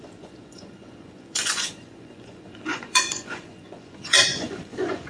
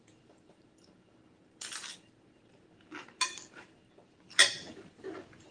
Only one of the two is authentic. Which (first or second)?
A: second